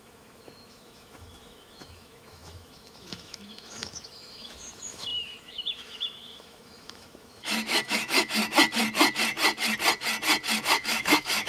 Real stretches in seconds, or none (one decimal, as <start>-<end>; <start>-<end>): 8.4-10.6